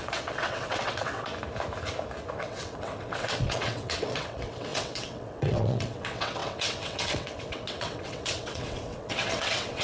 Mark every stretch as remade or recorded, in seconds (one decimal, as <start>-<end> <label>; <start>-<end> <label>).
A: 0.0-1.3 remade; 1.3-2.4 recorded; 2.4-9.8 remade